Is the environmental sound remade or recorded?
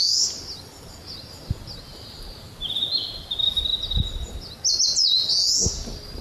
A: recorded